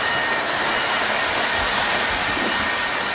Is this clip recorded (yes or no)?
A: yes